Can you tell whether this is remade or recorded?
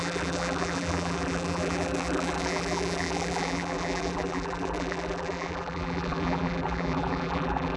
remade